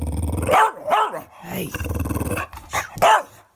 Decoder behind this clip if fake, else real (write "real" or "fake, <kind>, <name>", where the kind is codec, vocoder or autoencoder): real